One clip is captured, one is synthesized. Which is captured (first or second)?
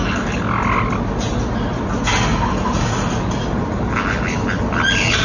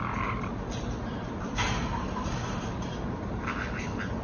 first